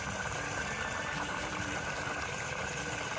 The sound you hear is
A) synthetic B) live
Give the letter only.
A